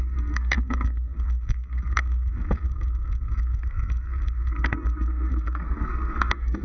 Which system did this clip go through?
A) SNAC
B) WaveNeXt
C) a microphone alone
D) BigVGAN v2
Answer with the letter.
A